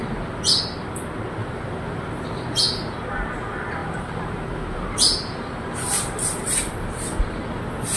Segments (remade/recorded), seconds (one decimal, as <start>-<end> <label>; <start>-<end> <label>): 0.0-1.4 recorded; 1.4-2.2 remade; 2.2-3.8 recorded; 3.8-7.6 remade; 7.6-8.0 recorded